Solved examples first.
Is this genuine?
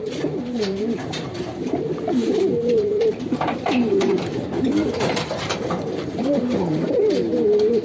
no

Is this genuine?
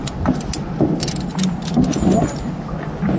yes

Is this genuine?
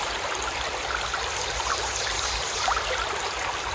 yes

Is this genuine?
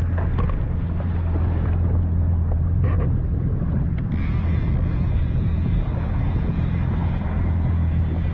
yes